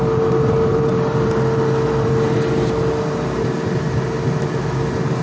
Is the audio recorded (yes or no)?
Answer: yes